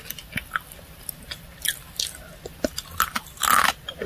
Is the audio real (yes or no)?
yes